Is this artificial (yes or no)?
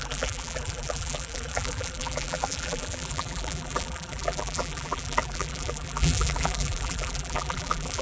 yes